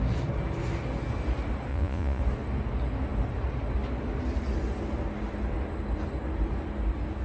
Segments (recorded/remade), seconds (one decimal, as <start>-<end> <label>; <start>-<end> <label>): 0.0-1.7 recorded; 1.7-2.2 remade; 2.2-7.2 recorded